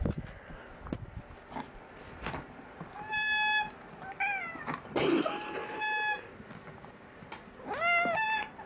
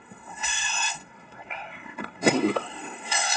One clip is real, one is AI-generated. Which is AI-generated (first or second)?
second